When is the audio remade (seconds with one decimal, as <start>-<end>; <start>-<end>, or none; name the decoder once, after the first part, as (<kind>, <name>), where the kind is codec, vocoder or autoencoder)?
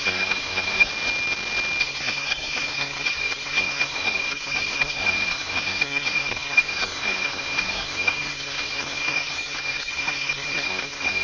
0.0-0.9 (codec, SNAC); 1.8-11.2